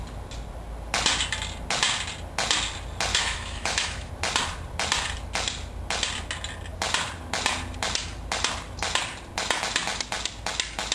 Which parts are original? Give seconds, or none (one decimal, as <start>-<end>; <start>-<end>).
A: 0.0-3.1; 4.1-10.9